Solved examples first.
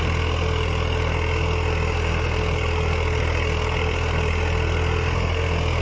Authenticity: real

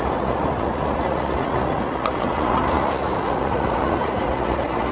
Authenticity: fake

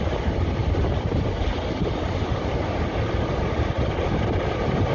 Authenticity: real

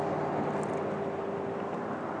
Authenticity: real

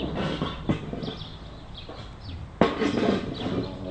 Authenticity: real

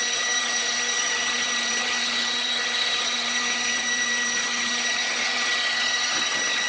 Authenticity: fake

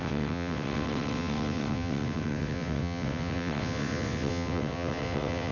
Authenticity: fake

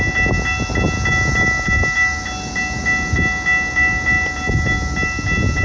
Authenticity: real